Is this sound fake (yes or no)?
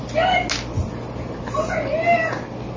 no